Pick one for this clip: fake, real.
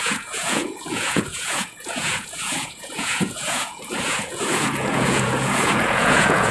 fake